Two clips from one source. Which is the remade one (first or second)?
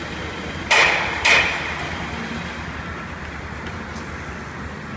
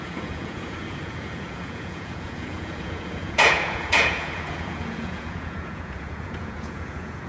second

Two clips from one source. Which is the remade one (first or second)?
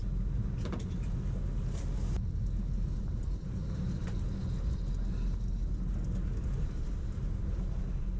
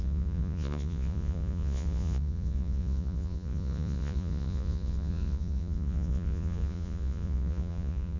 second